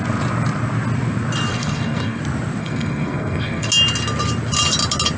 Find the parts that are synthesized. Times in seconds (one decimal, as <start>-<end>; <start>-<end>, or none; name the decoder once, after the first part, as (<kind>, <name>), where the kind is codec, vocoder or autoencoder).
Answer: 1.5-2.2 (codec, SNAC); 2.6-3.7